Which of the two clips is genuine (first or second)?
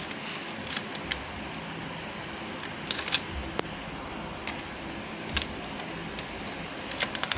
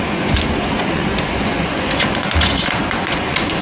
first